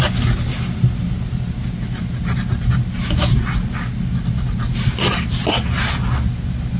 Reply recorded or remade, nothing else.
recorded